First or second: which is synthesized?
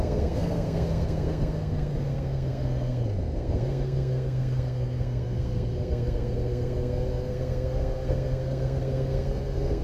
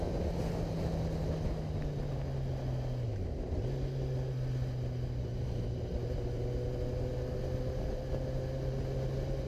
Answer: first